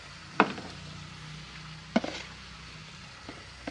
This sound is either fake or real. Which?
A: real